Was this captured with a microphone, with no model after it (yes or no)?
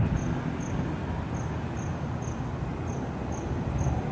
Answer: yes